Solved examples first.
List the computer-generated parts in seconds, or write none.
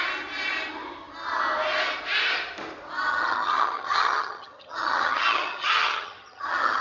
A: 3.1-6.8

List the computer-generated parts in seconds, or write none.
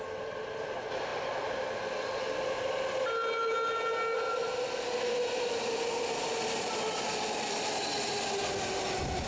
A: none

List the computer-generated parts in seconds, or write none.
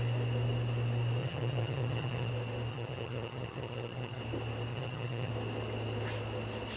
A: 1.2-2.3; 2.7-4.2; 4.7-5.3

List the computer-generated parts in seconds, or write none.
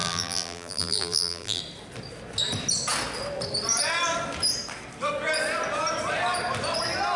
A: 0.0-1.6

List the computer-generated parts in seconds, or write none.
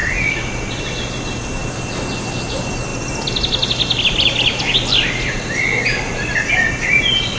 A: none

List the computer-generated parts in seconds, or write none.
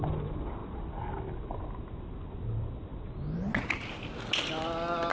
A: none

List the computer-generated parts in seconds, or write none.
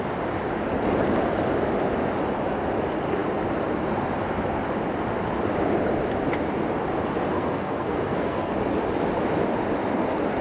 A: 7.3-8.5